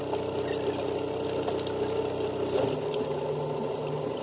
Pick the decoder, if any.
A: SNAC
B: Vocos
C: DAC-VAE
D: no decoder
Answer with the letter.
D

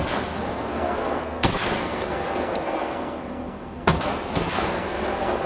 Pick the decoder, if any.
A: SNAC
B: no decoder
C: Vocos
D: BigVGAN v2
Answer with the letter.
A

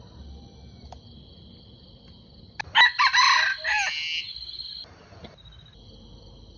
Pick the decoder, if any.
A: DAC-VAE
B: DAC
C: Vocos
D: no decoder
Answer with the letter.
D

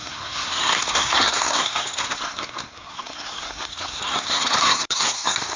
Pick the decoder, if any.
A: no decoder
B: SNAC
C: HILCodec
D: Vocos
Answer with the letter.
B